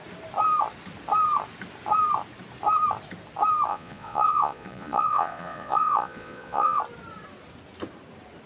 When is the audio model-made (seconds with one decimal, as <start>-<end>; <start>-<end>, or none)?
3.7-6.8